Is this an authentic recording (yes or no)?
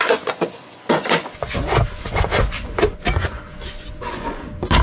no